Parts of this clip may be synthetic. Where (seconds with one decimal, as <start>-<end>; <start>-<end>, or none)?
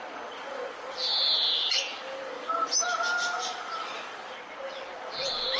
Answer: none